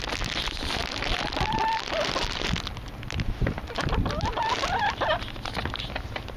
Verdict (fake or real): real